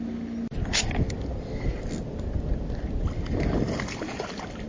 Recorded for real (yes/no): yes